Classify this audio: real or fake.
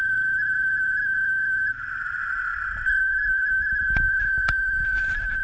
real